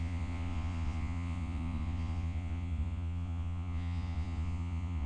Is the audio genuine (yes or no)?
no